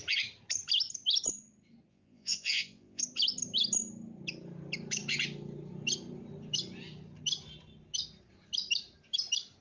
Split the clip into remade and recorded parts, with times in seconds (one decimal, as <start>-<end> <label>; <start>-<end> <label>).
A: 0.0-1.9 recorded; 1.9-3.0 remade; 3.0-9.6 recorded

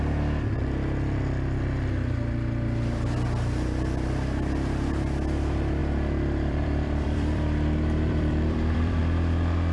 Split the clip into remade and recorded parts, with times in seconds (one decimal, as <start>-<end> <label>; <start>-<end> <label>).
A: 0.0-5.8 recorded; 5.8-9.0 remade; 9.0-9.7 recorded

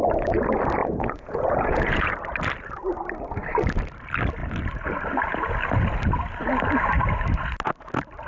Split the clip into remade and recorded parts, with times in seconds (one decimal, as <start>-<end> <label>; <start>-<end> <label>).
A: 0.0-0.8 recorded; 0.8-2.1 remade; 2.1-8.3 recorded

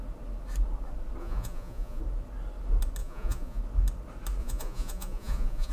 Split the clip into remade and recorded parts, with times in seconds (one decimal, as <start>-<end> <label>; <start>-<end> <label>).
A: 0.0-1.2 recorded; 1.2-2.0 remade; 2.0-3.0 recorded; 3.0-3.6 remade; 3.6-4.4 recorded; 4.4-5.7 remade